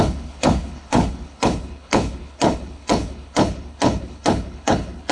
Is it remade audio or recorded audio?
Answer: remade